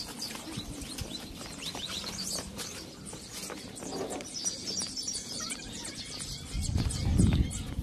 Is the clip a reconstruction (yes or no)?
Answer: yes